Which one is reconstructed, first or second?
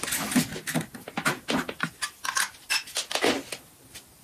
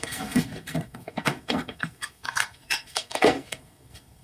second